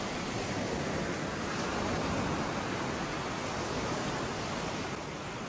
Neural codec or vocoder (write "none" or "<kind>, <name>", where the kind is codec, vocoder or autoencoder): none